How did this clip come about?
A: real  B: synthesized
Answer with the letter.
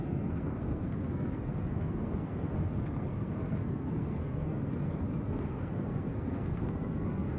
B